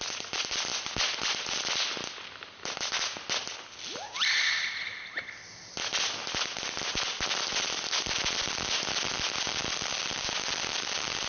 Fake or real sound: real